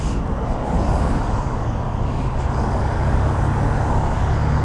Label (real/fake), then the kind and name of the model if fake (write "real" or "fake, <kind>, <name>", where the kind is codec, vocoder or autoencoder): fake, codec, DAC